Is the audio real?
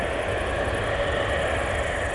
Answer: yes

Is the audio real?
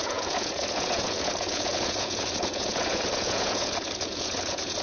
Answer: no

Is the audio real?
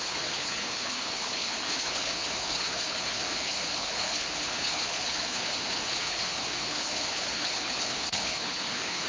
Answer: no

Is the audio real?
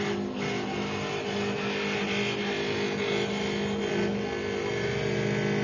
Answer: yes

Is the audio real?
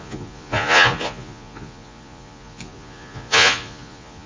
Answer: no